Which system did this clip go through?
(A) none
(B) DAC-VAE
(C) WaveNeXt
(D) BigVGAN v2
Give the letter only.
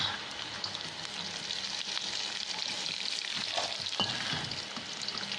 A